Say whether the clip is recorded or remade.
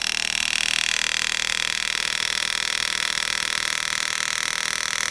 recorded